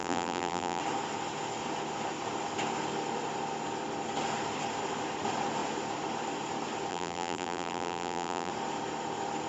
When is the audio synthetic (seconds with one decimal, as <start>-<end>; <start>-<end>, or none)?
0.0-0.8; 6.9-8.5